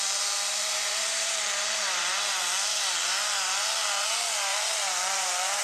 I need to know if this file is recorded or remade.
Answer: remade